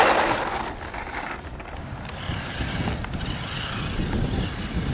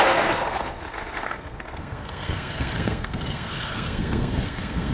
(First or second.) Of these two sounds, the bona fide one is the first